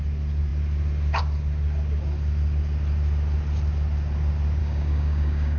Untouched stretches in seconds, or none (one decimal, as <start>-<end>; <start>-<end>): 0.0-4.6